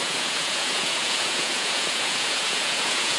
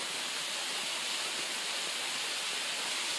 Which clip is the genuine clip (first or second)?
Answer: second